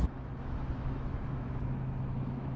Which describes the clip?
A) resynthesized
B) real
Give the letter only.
A